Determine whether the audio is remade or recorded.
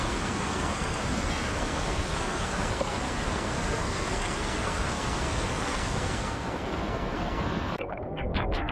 remade